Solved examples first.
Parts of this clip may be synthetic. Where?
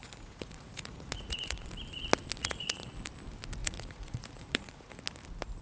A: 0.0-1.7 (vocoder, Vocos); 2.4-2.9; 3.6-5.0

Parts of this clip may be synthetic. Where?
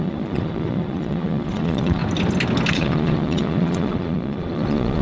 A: 0.0-2.0 (vocoder, Vocos); 2.7-5.0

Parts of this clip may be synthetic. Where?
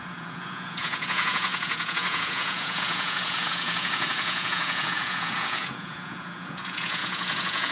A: 0.0-7.7 (vocoder, Vocos)